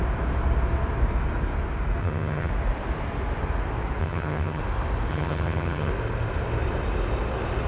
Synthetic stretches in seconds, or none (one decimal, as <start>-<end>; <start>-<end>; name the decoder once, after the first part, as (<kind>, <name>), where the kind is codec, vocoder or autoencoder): 2.0-2.5 (vocoder, HiFi-GAN); 4.0-4.6; 5.1-5.9